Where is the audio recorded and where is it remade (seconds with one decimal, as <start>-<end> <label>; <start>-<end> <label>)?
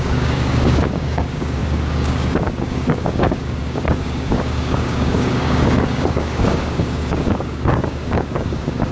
0.0-8.9 remade